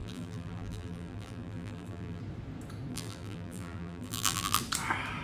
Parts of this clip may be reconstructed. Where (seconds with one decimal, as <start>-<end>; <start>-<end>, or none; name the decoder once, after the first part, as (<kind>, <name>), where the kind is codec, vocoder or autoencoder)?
0.0-2.2 (vocoder, BigVGAN v2); 2.9-4.6

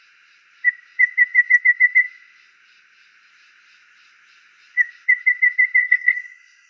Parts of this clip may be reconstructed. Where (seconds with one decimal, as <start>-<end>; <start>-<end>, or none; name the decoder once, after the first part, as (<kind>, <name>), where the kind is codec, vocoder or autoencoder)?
5.8-6.7 (codec, SNAC)

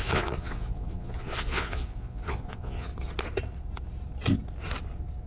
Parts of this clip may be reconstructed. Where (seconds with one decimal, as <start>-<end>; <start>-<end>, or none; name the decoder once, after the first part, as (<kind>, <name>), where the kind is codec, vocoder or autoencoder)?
0.0-2.9 (vocoder, Vocos)

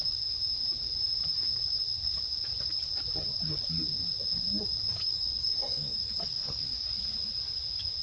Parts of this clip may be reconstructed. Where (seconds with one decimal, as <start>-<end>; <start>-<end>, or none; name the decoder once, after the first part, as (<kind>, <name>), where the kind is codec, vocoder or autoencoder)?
4.9-6.1 (codec, DAC)

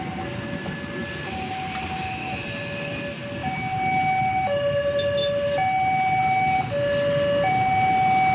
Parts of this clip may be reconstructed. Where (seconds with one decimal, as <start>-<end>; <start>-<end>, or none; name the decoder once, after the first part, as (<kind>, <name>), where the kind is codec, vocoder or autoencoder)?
none

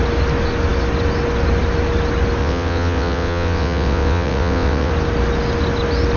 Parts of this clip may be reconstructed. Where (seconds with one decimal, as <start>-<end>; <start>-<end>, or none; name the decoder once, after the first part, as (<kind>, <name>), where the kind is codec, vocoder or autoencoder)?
2.4-4.9 (vocoder, WaveNeXt)